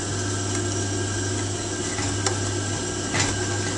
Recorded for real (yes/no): yes